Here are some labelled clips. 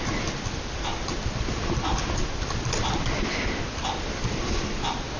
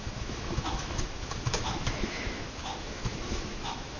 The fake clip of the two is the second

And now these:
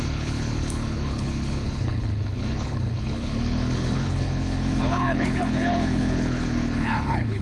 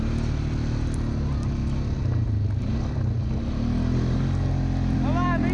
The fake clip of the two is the first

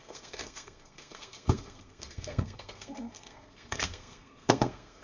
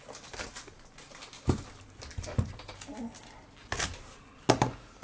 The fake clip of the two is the first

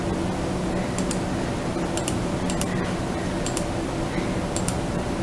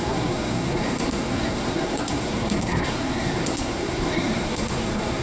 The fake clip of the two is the second